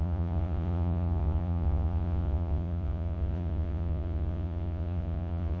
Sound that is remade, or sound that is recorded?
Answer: remade